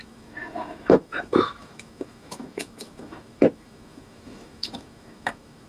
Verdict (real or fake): fake